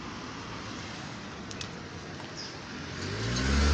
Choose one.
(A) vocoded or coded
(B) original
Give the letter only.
B